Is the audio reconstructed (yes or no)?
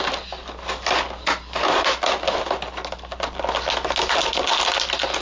no